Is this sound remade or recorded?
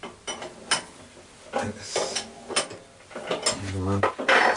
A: recorded